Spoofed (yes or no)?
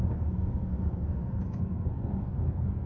yes